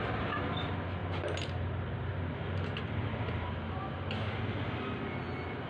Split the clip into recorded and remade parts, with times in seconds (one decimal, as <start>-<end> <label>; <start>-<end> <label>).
0.0-5.7 recorded